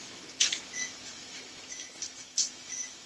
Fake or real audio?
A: fake